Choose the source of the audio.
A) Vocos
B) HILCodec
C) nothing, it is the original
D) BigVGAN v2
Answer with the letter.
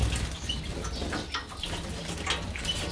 C